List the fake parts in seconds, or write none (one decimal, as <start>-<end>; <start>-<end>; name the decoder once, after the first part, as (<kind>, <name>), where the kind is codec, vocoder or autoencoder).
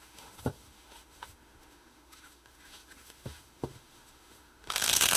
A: 0.0-5.2 (autoencoder, DAC-VAE)